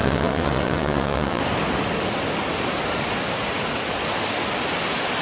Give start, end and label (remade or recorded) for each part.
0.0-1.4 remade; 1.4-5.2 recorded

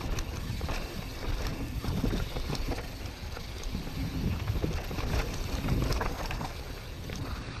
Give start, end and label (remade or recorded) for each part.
0.0-6.1 recorded; 6.1-6.6 remade; 6.6-7.6 recorded